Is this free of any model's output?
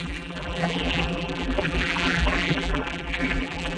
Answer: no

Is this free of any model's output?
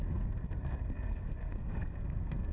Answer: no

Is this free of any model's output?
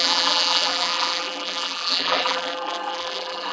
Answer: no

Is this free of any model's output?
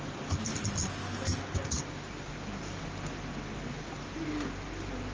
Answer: yes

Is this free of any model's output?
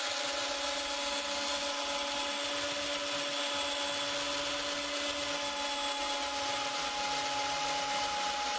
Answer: yes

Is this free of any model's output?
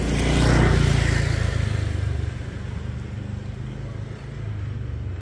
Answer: yes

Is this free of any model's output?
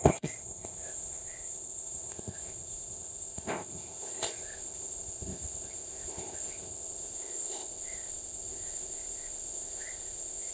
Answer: no